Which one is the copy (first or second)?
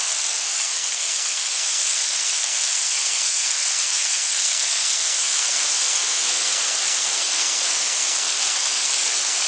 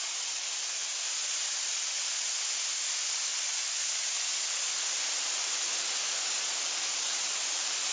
first